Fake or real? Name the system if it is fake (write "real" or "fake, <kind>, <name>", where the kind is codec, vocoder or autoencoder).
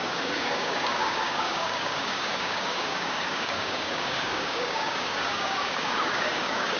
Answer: fake, codec, DAC